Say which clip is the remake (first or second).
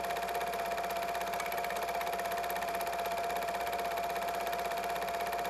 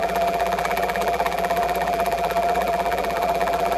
second